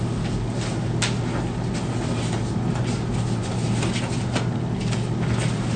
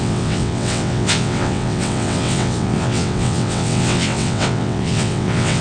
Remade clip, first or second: second